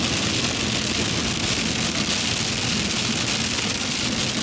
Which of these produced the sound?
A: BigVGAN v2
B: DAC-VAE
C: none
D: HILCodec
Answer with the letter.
C